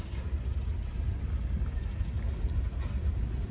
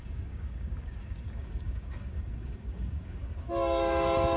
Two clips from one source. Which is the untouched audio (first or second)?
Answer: first